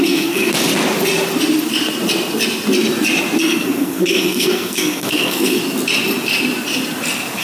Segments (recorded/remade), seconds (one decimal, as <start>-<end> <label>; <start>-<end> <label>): 0.0-0.5 remade; 0.5-3.4 recorded; 3.4-5.6 remade; 5.6-7.4 recorded